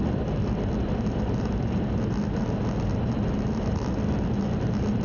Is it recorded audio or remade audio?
recorded